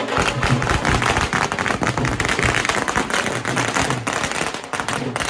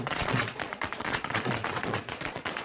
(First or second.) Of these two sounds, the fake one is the second